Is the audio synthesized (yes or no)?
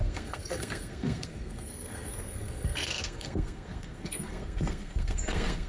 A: yes